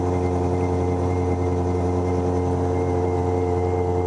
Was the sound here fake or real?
real